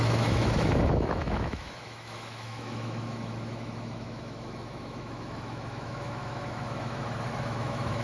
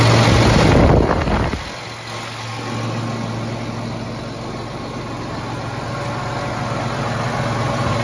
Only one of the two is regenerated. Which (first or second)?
first